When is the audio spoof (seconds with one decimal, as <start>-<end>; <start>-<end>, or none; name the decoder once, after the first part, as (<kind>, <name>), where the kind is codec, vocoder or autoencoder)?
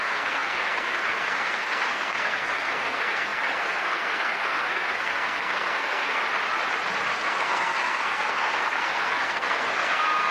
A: 0.0-6.2 (codec, SNAC); 7.1-10.3